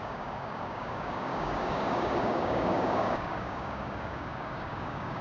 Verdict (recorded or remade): remade